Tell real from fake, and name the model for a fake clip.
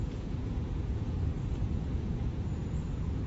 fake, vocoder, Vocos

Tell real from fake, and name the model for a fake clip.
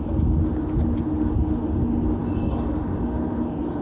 real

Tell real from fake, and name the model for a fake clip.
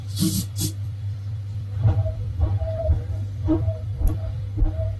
fake, vocoder, BigVGAN v2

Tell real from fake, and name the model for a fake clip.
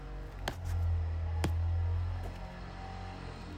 real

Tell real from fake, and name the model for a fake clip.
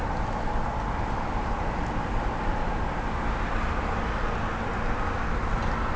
real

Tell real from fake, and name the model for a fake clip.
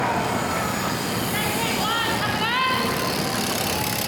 real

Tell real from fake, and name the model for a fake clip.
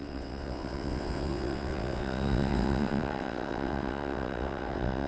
fake, vocoder, WaveNeXt